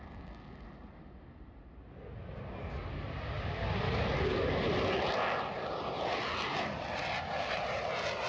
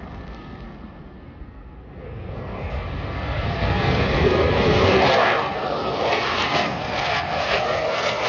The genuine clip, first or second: first